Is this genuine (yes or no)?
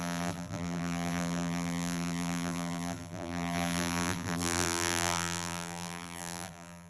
no